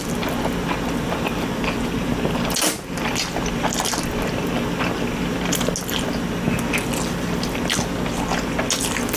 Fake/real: real